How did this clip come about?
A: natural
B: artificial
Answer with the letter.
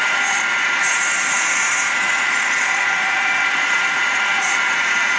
B